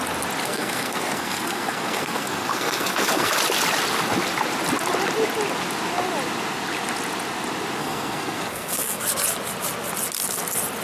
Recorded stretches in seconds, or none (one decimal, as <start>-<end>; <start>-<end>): 0.0-0.4; 3.3-7.8; 9.0-10.8